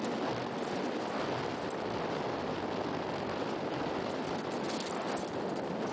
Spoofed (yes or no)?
no